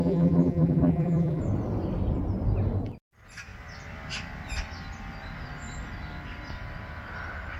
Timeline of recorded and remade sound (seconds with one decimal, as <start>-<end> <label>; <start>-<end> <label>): 0.0-1.4 remade; 1.4-7.6 recorded